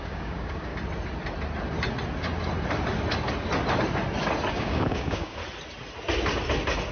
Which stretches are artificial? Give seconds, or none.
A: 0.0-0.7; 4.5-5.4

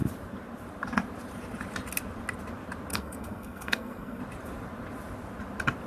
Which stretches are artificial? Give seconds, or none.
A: 2.9-4.2

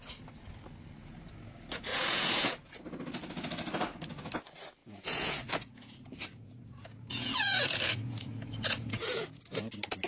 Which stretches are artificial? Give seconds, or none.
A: 1.9-2.8; 4.8-9.4

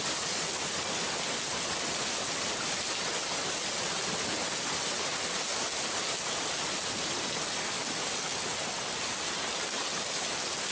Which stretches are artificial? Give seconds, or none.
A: none

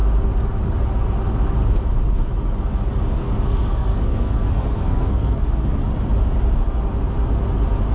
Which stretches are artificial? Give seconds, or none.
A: 3.2-5.8

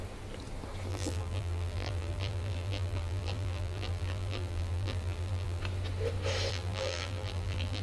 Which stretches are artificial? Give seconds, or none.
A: 0.9-5.6; 6.5-7.8